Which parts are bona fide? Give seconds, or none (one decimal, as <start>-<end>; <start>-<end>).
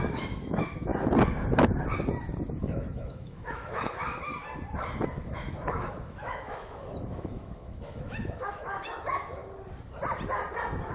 0.9-2.6; 4.3-5.2; 9.4-10.9